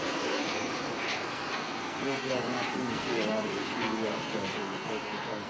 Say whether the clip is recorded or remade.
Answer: remade